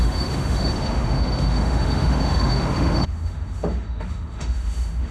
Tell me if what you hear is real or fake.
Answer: fake